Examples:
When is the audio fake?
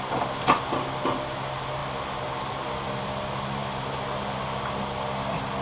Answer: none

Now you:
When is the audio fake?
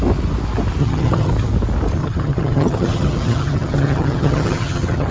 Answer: 0.8-1.3 (vocoder, HiFi-GAN); 2.0-5.1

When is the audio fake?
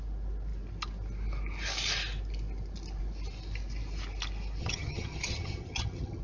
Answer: 4.6-6.2 (vocoder, HiFi-GAN)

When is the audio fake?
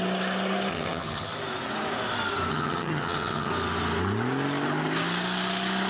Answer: 0.7-1.3 (vocoder, HiFi-GAN); 2.5-3.5